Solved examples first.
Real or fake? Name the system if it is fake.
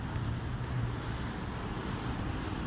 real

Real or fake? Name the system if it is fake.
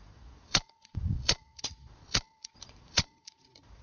fake, vocoder, Vocos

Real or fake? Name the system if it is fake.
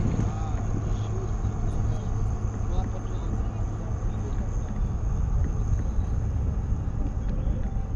real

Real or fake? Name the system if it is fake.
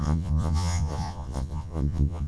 fake, vocoder, Vocos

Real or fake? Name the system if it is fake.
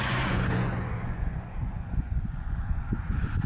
fake, vocoder, Vocos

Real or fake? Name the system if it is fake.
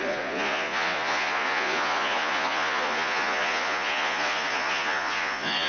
fake, vocoder, Vocos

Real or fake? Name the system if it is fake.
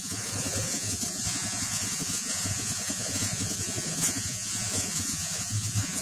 fake, vocoder, Vocos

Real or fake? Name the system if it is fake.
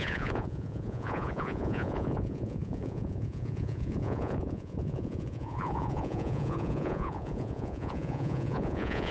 fake, vocoder, Vocos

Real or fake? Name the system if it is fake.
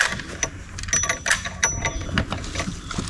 real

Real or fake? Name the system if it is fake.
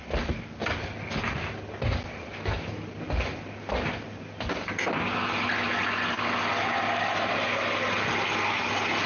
real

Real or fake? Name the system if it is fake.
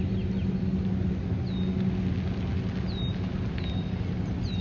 real